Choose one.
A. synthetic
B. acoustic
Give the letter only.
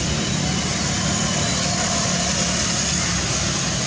B